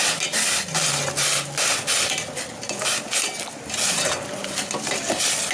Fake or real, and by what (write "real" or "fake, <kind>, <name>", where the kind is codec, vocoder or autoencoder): real